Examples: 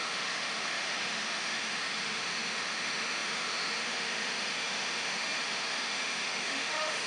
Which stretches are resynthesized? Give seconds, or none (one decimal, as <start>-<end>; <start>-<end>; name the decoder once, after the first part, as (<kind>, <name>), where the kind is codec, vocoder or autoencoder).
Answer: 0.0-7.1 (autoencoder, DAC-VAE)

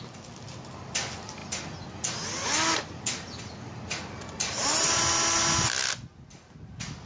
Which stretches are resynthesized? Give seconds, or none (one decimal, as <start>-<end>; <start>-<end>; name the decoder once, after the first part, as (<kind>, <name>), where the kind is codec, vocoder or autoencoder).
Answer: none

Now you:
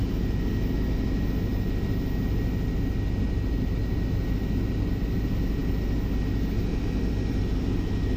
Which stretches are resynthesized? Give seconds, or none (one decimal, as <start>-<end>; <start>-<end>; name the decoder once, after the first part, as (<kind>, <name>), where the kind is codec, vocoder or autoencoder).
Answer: none

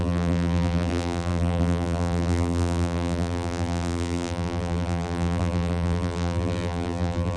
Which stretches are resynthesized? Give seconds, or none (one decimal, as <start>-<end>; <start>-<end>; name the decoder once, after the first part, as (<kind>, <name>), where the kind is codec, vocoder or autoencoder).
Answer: 0.0-7.4 (vocoder, BigVGAN v2)

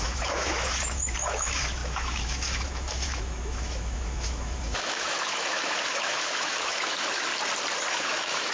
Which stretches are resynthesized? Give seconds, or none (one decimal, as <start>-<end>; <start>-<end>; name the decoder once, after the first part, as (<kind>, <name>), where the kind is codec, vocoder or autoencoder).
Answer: 0.0-7.3 (autoencoder, DAC-VAE); 7.9-8.5